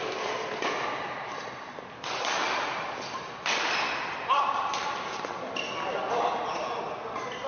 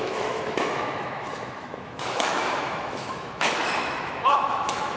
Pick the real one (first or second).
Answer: first